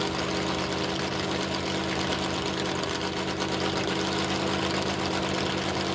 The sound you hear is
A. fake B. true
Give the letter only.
B